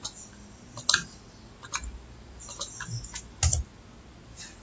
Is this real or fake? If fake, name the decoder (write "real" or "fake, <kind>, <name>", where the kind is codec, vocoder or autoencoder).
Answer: real